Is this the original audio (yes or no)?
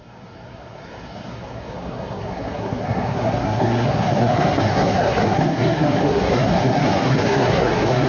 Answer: no